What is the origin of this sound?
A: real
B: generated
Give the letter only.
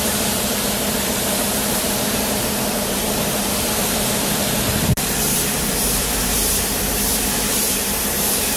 B